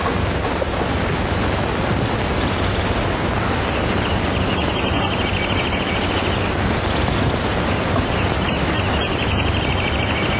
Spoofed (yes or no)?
no